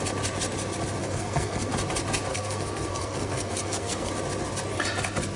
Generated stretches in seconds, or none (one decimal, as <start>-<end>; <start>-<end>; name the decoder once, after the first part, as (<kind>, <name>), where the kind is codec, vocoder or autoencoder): 1.0-1.7 (codec, SNAC); 2.3-4.1